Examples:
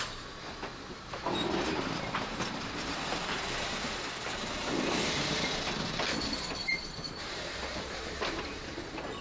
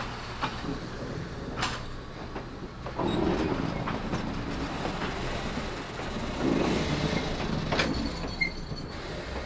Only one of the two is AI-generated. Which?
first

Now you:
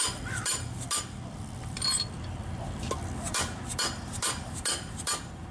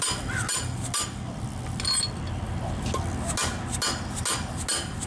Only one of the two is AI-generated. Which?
first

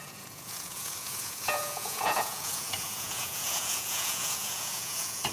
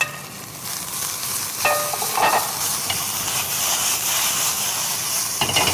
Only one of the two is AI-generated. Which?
first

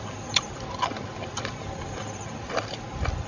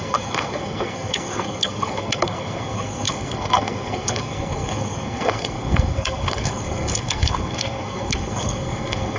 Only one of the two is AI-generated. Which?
second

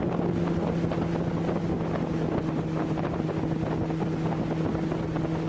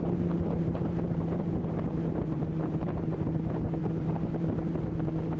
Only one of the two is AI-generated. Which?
second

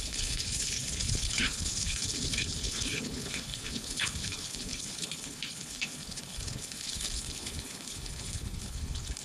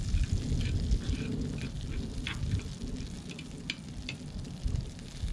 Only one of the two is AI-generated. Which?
first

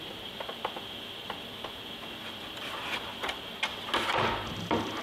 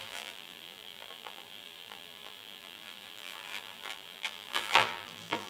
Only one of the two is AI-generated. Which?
second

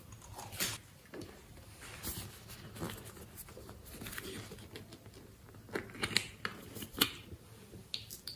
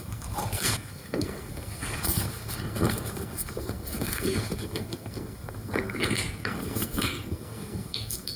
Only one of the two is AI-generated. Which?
second